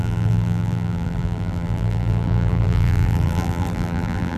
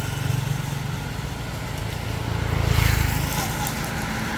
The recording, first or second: second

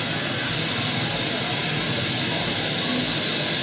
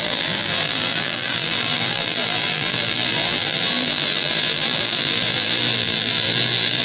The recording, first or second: first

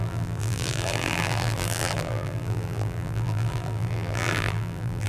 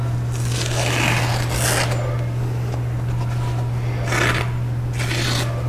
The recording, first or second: second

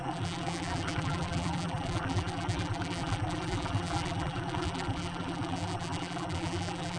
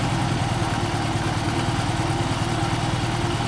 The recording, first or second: second